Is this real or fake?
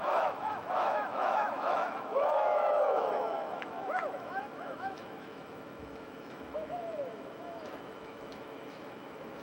fake